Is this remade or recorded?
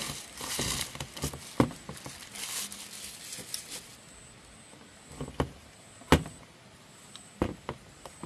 recorded